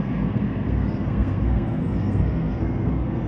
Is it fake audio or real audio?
fake